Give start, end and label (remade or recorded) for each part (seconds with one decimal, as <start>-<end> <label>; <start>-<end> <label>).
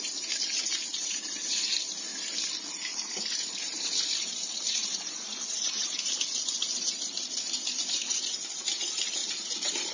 0.0-2.1 remade; 2.1-2.7 recorded; 2.7-9.9 remade